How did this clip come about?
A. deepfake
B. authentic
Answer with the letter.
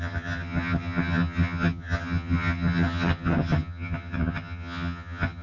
A